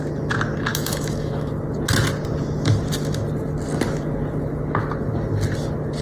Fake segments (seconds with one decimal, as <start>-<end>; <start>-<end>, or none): 0.7-1.6